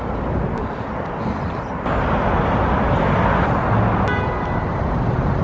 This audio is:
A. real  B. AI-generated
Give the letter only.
A